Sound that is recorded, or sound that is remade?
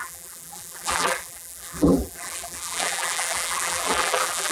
remade